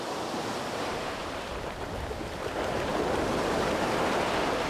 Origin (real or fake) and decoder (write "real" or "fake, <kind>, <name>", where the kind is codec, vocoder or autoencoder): real